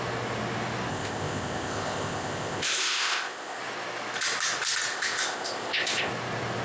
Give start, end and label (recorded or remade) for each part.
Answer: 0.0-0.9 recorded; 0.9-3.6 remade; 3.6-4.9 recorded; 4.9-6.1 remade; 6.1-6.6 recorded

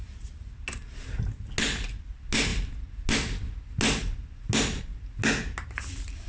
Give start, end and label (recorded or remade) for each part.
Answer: 0.0-6.3 recorded

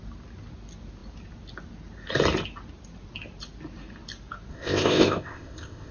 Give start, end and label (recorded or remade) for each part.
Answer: 0.0-4.5 recorded; 4.5-5.9 remade

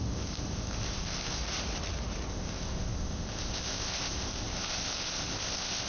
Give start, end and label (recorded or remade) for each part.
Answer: 0.0-1.4 remade; 1.4-2.3 recorded; 2.3-5.9 remade

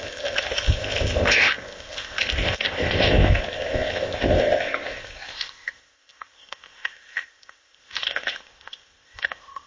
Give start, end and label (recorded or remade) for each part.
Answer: 0.0-9.7 remade

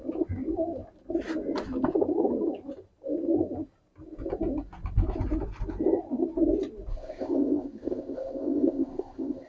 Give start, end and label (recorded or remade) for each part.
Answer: 0.0-6.9 recorded; 6.9-9.5 remade

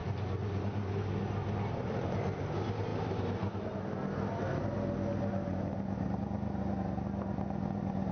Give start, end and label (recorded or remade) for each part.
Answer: 0.0-8.1 recorded